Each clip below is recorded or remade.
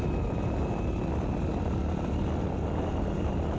recorded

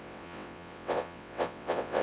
remade